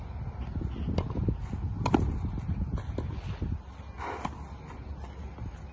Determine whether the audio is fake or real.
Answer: real